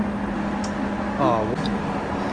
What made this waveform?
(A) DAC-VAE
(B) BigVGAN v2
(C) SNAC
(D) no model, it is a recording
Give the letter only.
D